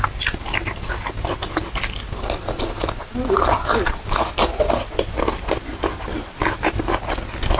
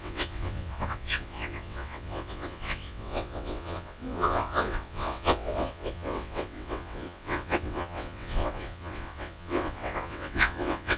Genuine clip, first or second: first